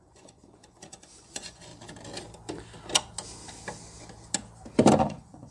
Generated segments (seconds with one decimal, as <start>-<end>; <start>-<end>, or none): 0.0-1.7; 5.0-5.5